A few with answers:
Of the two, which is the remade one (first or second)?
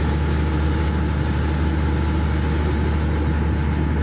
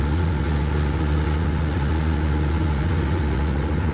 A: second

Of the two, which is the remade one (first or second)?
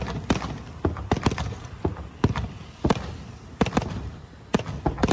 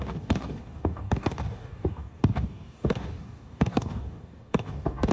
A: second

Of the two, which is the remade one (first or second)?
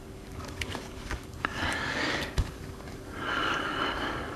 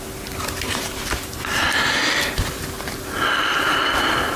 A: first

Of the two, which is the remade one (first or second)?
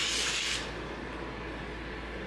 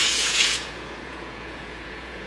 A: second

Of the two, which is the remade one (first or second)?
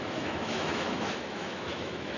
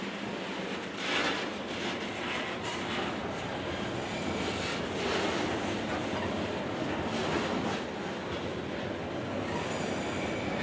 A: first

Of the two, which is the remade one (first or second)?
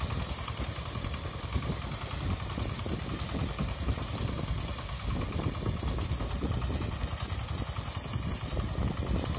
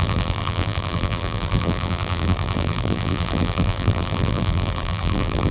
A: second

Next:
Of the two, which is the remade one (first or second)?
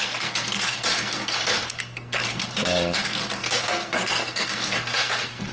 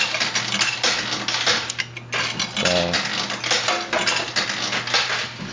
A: first